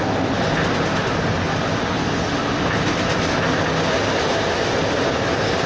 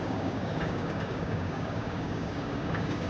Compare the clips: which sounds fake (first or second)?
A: second